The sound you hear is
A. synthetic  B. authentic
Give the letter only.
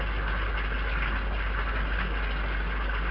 B